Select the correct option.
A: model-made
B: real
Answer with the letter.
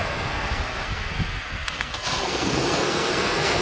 A